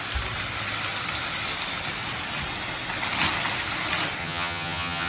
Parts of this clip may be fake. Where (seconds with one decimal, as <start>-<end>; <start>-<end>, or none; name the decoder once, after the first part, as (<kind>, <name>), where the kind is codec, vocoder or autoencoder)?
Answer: 4.2-5.1 (vocoder, HiFi-GAN)